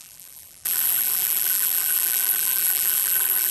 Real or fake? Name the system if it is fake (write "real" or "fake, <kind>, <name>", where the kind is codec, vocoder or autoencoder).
fake, vocoder, BigVGAN v2